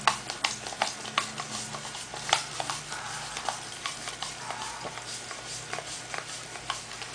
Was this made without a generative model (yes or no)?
yes